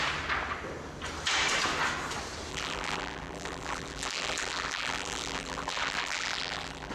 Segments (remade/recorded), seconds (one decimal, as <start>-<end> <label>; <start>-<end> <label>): 0.0-2.5 recorded; 2.5-6.9 remade